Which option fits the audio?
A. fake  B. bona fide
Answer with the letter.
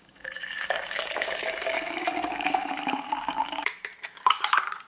A